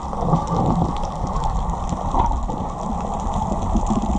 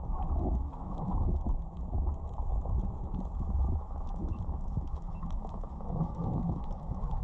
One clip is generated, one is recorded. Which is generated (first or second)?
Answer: second